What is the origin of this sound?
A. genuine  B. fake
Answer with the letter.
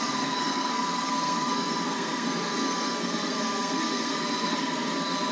B